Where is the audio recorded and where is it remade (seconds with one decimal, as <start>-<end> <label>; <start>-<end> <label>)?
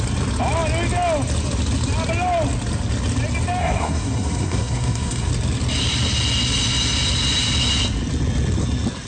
0.0-3.6 recorded; 3.6-5.3 remade; 5.3-9.1 recorded